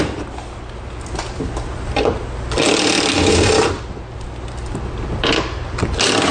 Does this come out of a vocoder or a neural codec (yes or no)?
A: no